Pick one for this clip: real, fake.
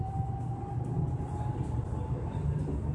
real